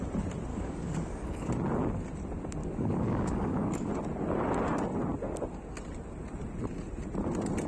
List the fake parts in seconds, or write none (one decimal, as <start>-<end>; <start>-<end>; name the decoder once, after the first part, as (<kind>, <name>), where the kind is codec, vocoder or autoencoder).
0.5-1.5 (codec, DAC); 2.6-3.9